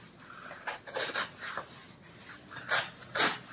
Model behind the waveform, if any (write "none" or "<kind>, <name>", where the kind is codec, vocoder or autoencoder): none